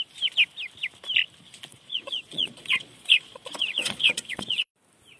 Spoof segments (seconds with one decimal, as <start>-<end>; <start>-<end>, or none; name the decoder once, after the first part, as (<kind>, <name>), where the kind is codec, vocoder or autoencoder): 1.7-4.7 (vocoder, Vocos)